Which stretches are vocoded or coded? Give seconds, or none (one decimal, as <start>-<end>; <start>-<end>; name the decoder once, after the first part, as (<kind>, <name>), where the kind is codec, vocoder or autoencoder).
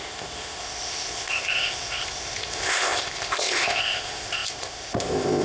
0.0-5.4 (codec, ZipCodec)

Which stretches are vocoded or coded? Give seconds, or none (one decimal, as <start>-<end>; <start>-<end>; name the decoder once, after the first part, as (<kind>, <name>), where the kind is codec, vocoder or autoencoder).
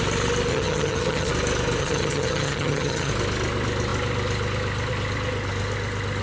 0.5-1.3 (vocoder, HiFi-GAN); 1.8-3.1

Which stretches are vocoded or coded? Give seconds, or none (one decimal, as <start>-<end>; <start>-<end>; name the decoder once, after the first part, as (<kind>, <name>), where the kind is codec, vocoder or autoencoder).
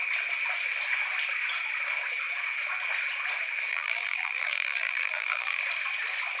3.7-5.6 (vocoder, BigVGAN v2)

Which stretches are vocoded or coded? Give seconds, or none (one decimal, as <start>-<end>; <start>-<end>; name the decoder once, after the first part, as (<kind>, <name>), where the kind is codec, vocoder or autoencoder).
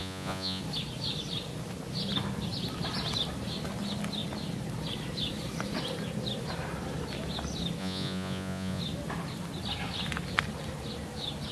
0.0-0.6 (vocoder, Vocos); 7.8-8.8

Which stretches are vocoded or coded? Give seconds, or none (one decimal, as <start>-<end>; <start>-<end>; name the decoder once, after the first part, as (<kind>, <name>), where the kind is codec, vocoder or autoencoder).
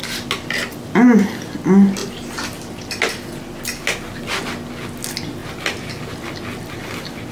none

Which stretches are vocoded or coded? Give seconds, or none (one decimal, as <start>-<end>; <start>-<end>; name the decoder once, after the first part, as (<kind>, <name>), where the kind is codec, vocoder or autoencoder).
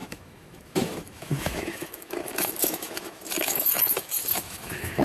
0.0-5.0 (autoencoder, DAC-VAE)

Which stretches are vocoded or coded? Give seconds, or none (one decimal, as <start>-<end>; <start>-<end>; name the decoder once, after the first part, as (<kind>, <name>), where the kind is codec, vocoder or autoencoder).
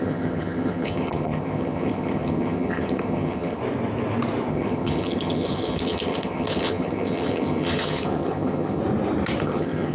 0.0-3.6 (vocoder, HiFi-GAN); 4.5-8.8; 9.4-9.9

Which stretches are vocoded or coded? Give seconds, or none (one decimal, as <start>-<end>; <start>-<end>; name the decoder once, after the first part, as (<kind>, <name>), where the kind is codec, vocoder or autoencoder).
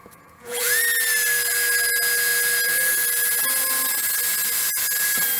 0.0-0.8 (vocoder, Vocos)